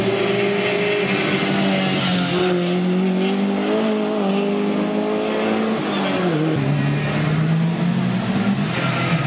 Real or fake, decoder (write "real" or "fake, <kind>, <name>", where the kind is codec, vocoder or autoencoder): real